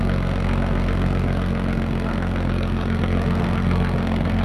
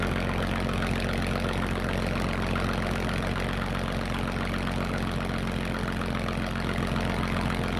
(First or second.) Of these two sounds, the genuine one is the second